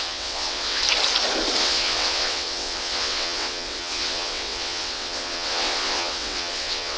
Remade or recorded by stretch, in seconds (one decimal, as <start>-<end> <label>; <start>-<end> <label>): 0.0-0.8 remade; 0.8-1.6 recorded; 1.6-7.0 remade